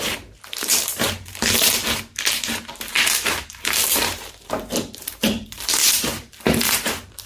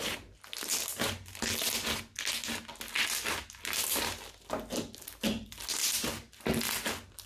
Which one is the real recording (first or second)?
second